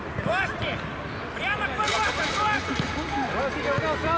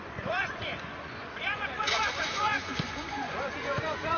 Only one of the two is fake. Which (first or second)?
second